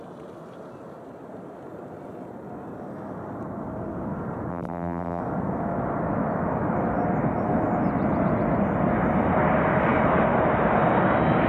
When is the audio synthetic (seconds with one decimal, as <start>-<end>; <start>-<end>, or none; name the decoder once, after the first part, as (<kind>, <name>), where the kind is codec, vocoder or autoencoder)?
4.5-5.2 (vocoder, BigVGAN v2)